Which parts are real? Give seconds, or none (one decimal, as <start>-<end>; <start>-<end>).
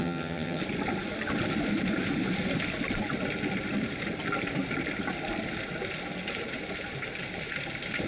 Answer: 0.6-8.1